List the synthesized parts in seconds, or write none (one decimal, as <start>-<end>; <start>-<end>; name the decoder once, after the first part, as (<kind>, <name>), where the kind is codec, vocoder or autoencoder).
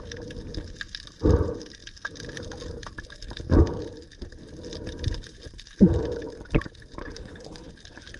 7.0-7.7 (codec, HILCodec)